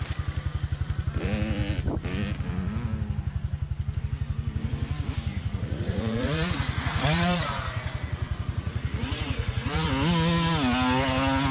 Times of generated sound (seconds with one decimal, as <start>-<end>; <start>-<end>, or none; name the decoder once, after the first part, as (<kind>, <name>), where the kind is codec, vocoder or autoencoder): 5.3-9.9 (vocoder, Vocos)